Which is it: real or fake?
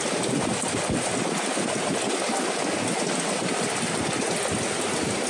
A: real